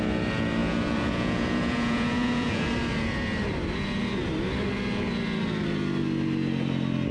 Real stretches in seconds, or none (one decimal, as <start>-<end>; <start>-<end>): 0.0-0.6; 2.7-7.1